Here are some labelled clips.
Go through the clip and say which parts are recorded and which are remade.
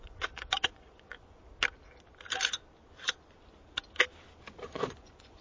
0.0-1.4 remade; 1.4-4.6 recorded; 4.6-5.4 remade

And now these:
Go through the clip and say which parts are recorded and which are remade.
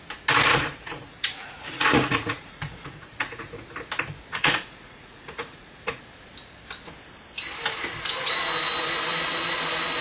0.0-0.5 recorded; 0.5-3.4 remade; 3.4-4.3 recorded; 4.3-6.0 remade; 6.0-10.0 recorded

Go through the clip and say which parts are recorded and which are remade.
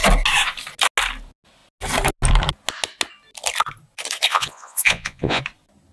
0.0-4.3 recorded; 4.3-5.4 remade; 5.4-5.9 recorded